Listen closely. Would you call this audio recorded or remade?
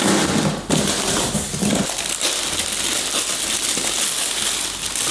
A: recorded